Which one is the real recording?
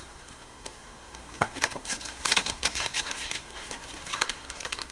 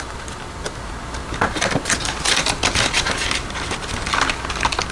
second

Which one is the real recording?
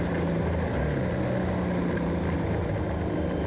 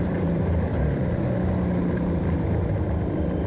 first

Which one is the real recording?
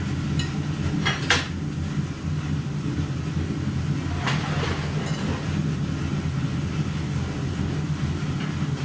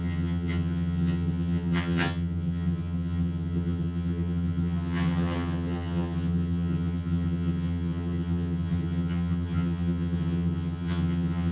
first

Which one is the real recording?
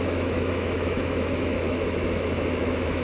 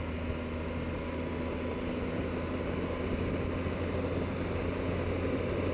second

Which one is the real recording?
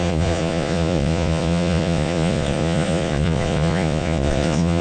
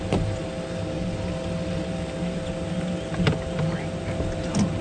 second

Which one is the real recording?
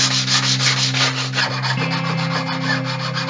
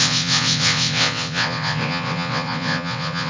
first